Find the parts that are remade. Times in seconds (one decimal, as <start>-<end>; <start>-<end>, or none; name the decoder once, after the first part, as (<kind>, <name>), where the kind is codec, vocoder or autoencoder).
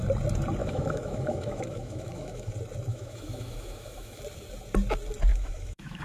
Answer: 0.6-2.5 (autoencoder, DAC-VAE); 2.9-4.2; 5.3-6.0